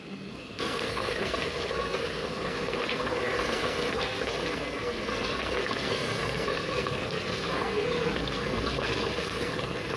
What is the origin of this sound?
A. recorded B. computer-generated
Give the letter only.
B